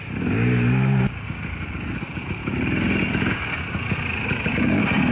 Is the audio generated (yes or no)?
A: no